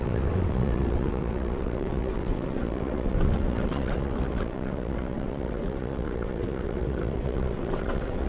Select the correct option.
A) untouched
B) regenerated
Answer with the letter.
B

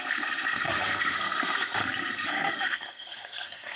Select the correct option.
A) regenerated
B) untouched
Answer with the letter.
A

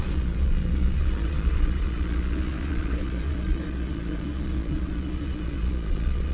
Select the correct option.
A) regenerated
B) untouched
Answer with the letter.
A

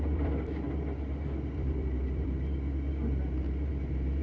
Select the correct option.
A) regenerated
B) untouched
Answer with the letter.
A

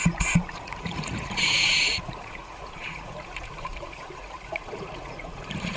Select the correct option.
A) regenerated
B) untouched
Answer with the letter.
A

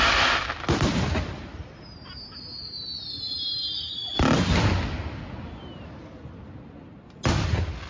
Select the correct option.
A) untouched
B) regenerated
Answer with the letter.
A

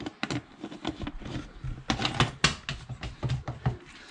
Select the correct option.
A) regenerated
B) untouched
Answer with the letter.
B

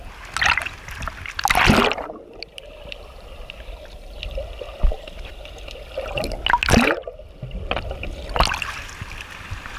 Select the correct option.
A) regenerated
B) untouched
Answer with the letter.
B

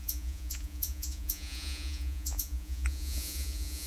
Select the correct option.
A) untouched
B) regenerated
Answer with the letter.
B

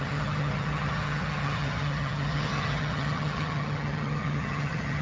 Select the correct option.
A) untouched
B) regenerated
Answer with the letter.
B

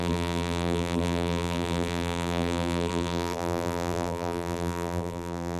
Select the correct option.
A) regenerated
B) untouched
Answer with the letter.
A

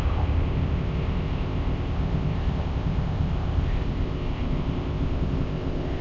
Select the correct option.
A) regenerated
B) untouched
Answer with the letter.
A